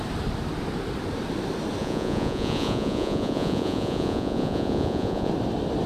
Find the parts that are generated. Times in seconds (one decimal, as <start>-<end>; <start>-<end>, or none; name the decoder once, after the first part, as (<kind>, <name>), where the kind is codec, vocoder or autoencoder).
1.8-5.3 (vocoder, Vocos)